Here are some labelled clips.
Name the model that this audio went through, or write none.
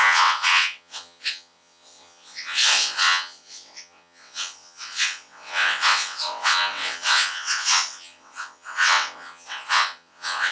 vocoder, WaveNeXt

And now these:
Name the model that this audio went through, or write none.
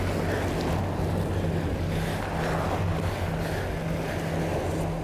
none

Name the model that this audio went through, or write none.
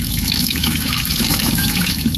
autoencoder, DAC-VAE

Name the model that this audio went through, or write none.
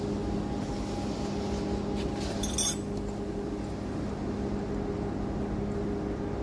none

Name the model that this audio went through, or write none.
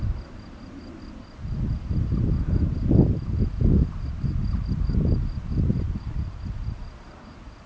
none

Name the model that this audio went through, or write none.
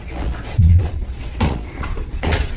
vocoder, Vocos